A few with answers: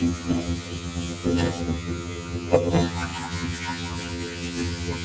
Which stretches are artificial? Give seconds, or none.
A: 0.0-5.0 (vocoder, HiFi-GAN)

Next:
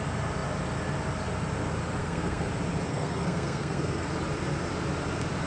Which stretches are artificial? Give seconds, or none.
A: 2.0-2.5 (codec, SNAC); 2.9-4.1

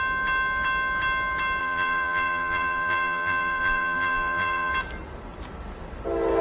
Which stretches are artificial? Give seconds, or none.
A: 1.6-4.7 (vocoder, BigVGAN v2)